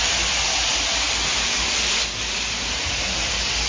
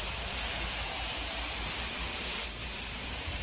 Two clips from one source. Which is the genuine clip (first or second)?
first